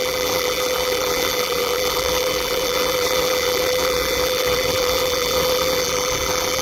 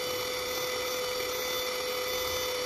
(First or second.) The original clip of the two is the second